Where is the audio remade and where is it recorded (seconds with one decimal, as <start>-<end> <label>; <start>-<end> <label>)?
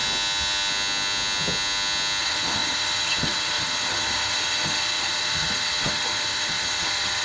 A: 0.0-2.2 recorded; 2.2-7.2 remade